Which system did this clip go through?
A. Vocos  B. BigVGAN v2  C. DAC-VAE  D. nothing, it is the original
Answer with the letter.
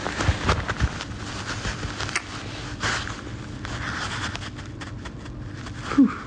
D